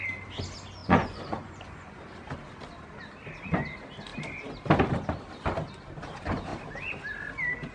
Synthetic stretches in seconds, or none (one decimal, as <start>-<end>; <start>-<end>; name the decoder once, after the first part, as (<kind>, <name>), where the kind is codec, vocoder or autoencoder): 0.8-2.0 (vocoder, Vocos)